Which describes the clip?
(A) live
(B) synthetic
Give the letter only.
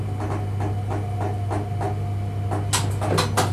A